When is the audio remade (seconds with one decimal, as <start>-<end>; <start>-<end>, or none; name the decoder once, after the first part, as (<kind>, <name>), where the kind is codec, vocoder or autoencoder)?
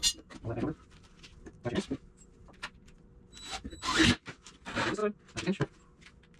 0.0-3.8 (vocoder, BigVGAN v2)